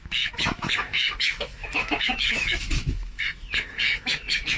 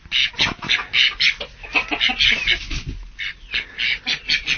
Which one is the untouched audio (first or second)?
second